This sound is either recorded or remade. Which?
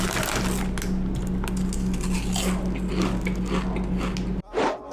recorded